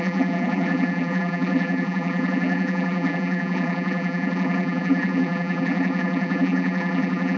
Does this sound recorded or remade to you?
remade